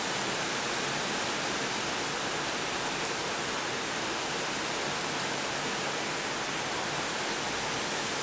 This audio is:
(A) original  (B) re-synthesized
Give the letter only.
A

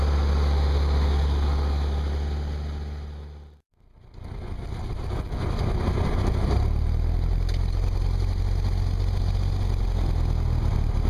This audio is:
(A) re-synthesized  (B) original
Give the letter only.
B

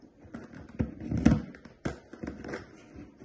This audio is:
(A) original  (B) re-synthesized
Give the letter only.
A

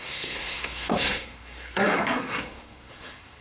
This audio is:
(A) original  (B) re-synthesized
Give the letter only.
B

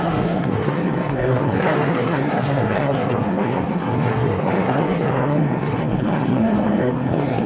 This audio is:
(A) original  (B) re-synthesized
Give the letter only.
B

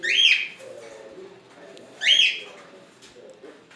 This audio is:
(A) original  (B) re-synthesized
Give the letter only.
A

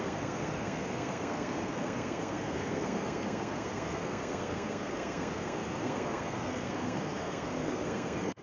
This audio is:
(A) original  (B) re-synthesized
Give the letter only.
B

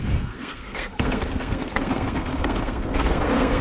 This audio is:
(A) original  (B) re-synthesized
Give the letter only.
B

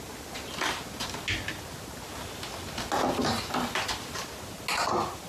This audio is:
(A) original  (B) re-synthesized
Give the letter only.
A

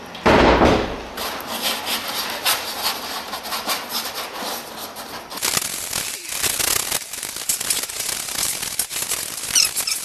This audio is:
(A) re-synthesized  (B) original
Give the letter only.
B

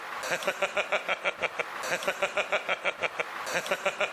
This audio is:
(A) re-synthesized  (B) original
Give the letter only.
B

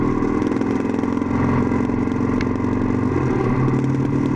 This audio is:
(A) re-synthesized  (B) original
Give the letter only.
B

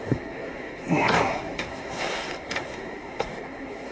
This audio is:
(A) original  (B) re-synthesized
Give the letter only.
B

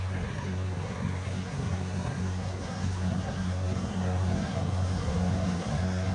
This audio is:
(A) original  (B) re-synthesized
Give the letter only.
B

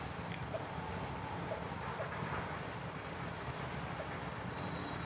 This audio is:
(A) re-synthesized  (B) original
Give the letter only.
B